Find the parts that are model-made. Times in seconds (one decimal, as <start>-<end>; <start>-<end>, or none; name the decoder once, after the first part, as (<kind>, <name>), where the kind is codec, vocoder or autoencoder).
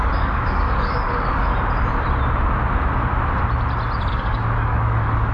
0.0-1.5 (codec, DAC); 4.1-5.3